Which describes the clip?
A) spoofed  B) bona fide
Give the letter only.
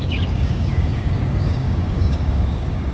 A